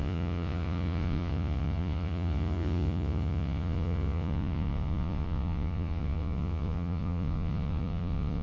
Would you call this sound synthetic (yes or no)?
yes